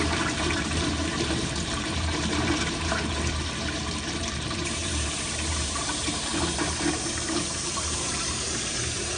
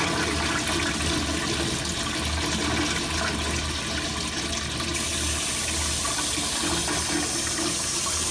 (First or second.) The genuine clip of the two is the second